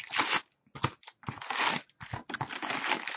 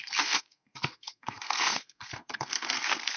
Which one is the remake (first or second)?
second